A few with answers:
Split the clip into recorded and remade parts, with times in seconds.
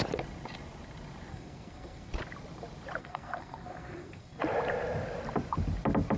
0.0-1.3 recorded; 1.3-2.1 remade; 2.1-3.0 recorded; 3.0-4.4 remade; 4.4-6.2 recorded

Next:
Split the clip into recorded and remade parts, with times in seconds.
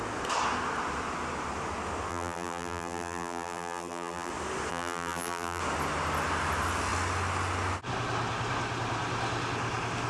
0.0-2.1 recorded; 2.1-4.3 remade; 4.3-4.7 recorded; 4.7-5.6 remade; 5.6-10.1 recorded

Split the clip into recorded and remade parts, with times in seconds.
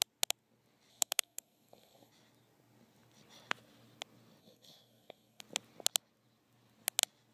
0.0-0.9 recorded; 0.9-2.1 remade; 2.1-4.4 recorded; 4.4-5.4 remade; 5.4-7.3 recorded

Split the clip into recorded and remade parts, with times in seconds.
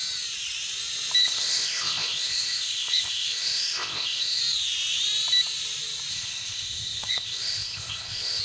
0.0-1.2 recorded; 1.2-4.4 remade; 4.4-6.1 recorded; 6.1-8.4 remade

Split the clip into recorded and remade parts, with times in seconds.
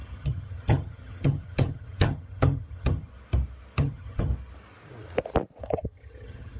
0.0-3.1 remade; 3.1-3.8 recorded; 3.8-4.3 remade; 4.3-5.6 recorded; 5.6-6.6 remade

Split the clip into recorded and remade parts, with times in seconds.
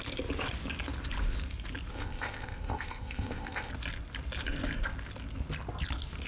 0.0-1.9 recorded; 1.9-3.7 remade; 3.7-6.3 recorded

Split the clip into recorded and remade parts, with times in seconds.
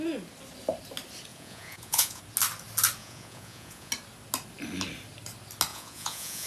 0.0-1.3 recorded; 1.3-2.2 remade; 2.2-3.0 recorded; 3.0-3.9 remade; 3.9-5.7 recorded; 5.7-6.5 remade